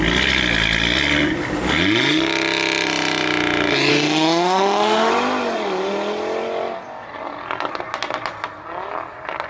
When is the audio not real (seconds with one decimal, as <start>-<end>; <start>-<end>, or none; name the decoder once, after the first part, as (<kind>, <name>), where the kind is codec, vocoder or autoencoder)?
3.9-5.1 (autoencoder, DAC-VAE)